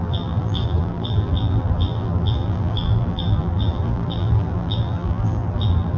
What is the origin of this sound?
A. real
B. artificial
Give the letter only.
B